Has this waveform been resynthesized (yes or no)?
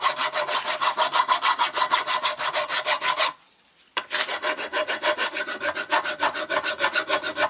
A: yes